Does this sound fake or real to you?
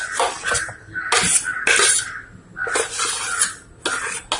real